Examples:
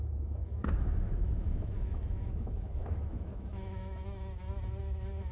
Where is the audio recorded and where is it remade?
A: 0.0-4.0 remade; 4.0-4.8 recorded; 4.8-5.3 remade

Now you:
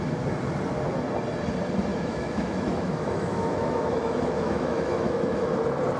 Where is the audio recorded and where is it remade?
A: 0.0-1.9 recorded; 1.9-5.5 remade; 5.5-6.0 recorded

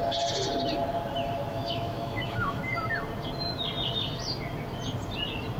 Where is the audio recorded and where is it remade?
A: 0.0-1.5 recorded; 1.5-2.6 remade; 2.6-5.6 recorded

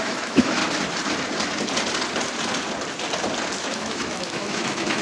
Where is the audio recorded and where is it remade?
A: 0.0-0.6 remade; 0.6-3.6 recorded; 3.6-5.0 remade

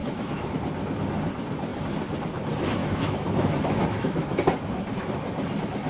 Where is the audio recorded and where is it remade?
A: 0.0-0.5 remade; 0.5-2.8 recorded; 2.8-4.4 remade; 4.4-5.9 recorded

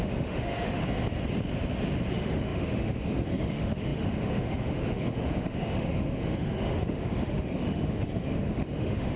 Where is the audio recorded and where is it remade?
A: 0.0-0.8 remade; 0.8-2.1 recorded; 2.1-9.2 remade

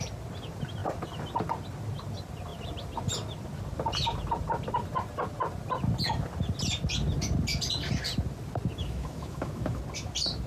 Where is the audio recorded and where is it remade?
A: 0.0-8.8 recorded; 8.8-9.8 remade; 9.8-10.5 recorded